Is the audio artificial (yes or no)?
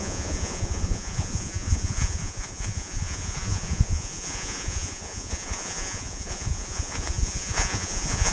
yes